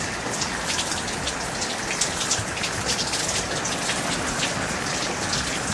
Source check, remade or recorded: recorded